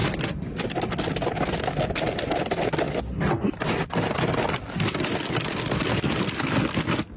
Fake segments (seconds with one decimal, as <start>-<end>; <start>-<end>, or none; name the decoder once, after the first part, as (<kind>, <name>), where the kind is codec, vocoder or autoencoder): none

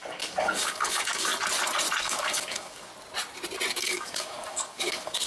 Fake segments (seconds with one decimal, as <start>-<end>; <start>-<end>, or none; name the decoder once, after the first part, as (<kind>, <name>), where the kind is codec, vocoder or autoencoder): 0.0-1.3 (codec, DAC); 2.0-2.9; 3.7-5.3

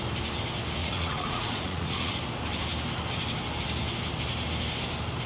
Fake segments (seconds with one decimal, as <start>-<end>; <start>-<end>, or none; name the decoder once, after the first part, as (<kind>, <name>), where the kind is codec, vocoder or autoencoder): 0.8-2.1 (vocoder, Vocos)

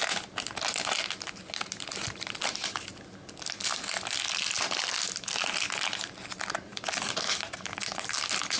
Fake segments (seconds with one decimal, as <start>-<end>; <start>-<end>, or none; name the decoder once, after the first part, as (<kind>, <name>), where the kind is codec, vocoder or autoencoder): none

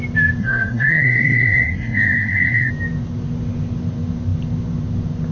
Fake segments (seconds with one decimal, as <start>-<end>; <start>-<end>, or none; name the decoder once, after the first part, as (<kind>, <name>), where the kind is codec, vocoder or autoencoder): 0.4-2.7 (codec, SNAC)

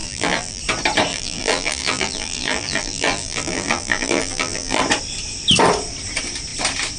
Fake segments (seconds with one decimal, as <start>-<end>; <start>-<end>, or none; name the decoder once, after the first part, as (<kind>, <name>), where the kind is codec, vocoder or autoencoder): 0.0-0.6 (vocoder, BigVGAN v2); 1.1-4.8

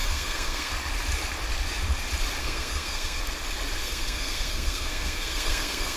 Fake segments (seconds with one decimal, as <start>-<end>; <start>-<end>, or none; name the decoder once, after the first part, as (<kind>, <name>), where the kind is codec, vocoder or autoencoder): 0.0-0.7 (codec, SNAC); 2.4-3.2; 3.8-6.0

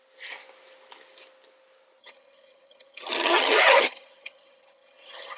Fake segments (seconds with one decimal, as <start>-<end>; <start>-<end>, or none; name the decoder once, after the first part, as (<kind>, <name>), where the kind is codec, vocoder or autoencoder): 2.0-5.4 (vocoder, HiFi-GAN)